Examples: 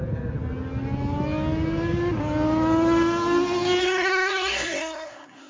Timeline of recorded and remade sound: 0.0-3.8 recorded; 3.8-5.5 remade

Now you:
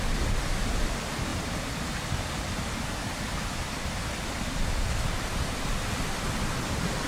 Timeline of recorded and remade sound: 0.0-7.1 recorded

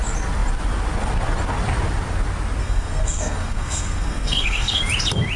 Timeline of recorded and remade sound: 0.0-2.6 recorded; 2.6-4.8 remade; 4.8-5.4 recorded

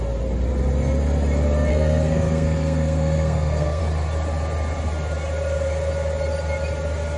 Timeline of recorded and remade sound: 0.0-1.7 recorded; 1.7-3.8 remade; 3.8-7.2 recorded

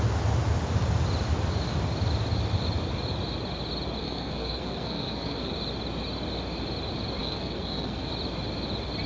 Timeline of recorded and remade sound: 0.0-4.0 recorded; 4.0-5.5 remade; 5.5-7.2 recorded; 7.2-8.1 remade; 8.1-9.1 recorded

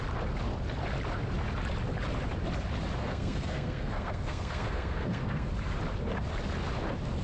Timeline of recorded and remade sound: 0.0-3.0 recorded; 3.0-5.5 remade; 5.5-7.2 recorded